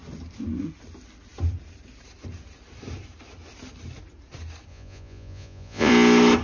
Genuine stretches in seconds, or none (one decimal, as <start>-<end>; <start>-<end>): 0.0-4.7; 5.9-6.4